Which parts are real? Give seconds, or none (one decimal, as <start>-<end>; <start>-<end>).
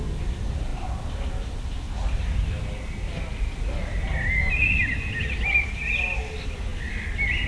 0.0-7.5